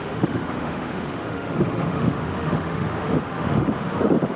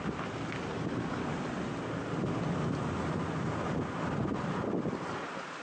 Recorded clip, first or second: second